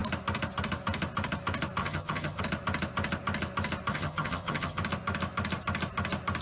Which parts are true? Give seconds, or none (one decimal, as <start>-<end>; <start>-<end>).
0.0-1.8; 2.4-3.9; 4.8-6.4